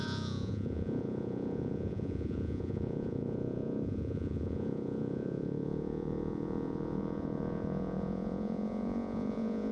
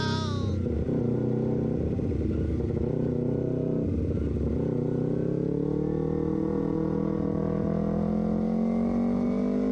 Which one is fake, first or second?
first